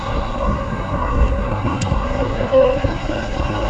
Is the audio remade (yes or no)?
yes